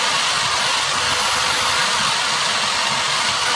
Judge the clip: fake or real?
real